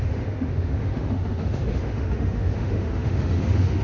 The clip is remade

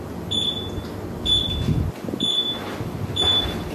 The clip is recorded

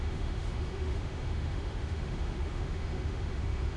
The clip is remade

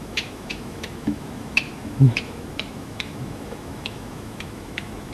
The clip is remade